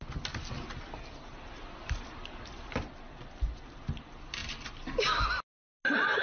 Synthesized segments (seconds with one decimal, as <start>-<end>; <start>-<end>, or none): none